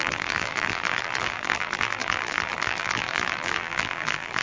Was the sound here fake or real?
fake